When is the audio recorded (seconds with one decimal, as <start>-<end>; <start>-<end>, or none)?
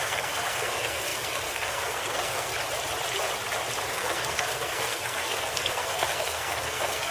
2.5-3.9